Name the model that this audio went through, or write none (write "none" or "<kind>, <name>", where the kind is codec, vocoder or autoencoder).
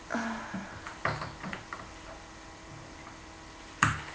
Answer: none